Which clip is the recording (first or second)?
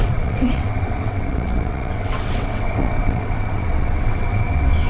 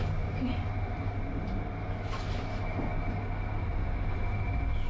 second